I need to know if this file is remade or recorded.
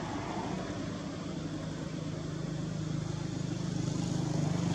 recorded